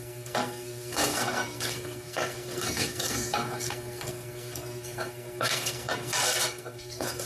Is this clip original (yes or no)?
no